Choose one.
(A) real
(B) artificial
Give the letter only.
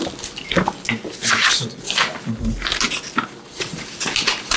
A